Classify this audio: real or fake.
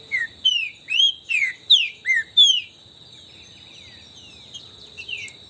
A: real